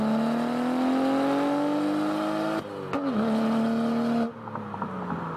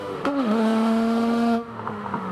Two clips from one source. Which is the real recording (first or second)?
first